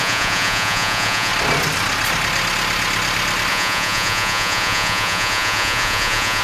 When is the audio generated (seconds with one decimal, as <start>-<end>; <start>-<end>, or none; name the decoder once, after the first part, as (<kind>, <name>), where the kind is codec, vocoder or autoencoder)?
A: 0.0-1.3 (vocoder, Vocos); 3.5-6.4